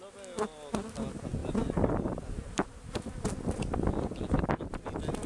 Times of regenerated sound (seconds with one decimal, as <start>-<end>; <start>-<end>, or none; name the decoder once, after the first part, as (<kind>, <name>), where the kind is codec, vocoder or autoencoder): none